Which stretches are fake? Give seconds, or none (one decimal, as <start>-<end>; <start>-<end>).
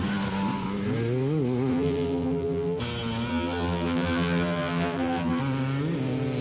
1.7-2.8; 3.3-5.4